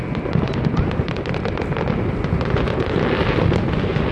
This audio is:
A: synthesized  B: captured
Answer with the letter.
B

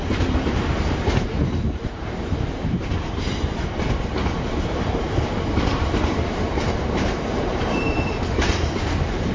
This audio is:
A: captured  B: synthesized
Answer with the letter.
B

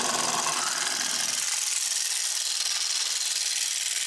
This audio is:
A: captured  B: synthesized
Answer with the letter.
A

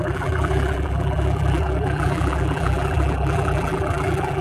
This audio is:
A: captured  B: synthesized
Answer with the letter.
B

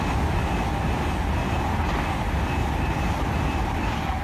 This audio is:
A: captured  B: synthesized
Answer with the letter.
A